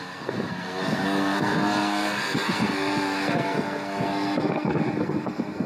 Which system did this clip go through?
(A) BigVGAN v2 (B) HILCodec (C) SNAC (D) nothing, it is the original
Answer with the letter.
C